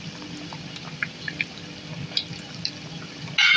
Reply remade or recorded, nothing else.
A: recorded